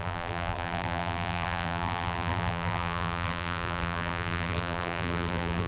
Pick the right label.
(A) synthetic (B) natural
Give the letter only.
A